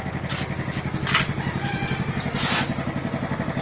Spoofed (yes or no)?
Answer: no